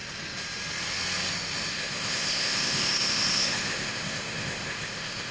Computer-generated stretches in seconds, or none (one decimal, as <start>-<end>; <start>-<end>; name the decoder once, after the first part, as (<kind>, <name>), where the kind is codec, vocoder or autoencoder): 1.7-5.3 (codec, ZipCodec)